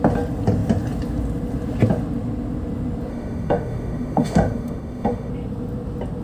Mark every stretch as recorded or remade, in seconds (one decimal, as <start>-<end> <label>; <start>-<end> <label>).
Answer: 0.0-3.1 recorded; 3.1-5.3 remade; 5.3-6.2 recorded

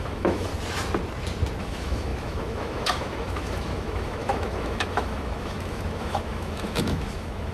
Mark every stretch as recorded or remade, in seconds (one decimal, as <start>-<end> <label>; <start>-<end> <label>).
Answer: 0.0-0.5 remade; 0.5-1.6 recorded; 1.6-7.5 remade

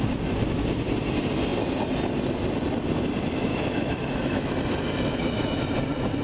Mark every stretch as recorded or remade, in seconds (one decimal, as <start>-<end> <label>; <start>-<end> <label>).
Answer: 0.0-3.5 recorded; 3.5-4.5 remade; 4.5-5.1 recorded; 5.1-5.6 remade; 5.6-6.2 recorded

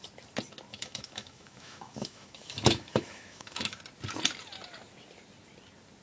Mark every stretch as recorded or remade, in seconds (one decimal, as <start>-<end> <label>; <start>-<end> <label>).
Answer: 0.0-0.7 recorded; 0.7-3.8 remade; 3.8-6.0 recorded